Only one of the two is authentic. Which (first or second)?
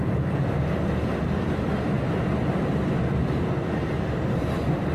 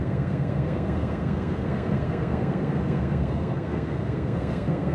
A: first